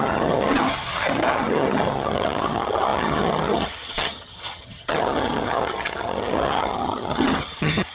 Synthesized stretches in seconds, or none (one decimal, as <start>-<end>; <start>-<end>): 0.0-7.9